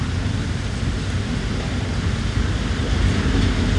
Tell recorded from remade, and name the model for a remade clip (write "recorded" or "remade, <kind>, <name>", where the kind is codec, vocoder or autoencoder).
recorded